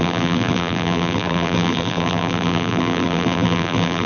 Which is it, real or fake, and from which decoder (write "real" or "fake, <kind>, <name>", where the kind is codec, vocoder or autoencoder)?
fake, vocoder, BigVGAN v2